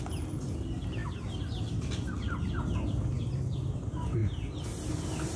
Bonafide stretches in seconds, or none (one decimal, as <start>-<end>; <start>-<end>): 0.0-5.4